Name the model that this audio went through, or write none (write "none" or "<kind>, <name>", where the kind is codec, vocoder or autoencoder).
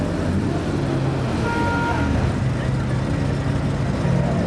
none